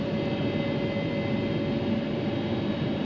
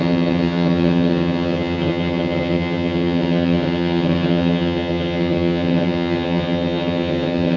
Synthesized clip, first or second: second